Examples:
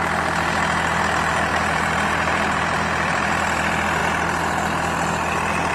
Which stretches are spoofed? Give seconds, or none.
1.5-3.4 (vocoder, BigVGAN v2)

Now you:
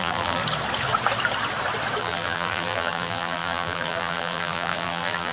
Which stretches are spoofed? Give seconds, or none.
0.0-0.4 (vocoder, BigVGAN v2); 2.0-5.3

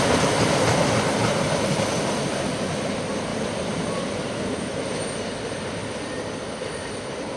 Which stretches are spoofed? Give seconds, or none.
3.3-4.2 (vocoder, BigVGAN v2); 5.8-6.6

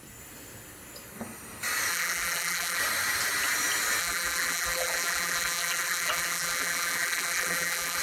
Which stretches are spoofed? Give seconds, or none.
1.9-2.8 (vocoder, BigVGAN v2); 4.0-8.0

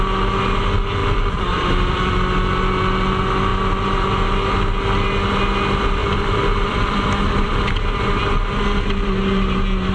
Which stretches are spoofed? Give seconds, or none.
1.0-2.1 (vocoder, BigVGAN v2); 6.0-7.6

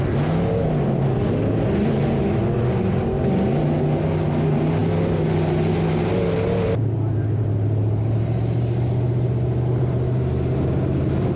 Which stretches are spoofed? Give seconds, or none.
none